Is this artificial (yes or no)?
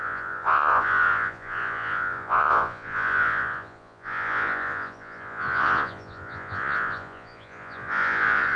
yes